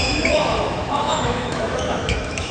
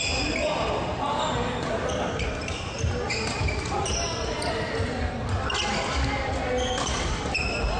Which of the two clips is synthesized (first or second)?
first